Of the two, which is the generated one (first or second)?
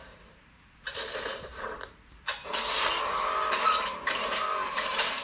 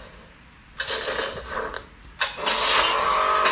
first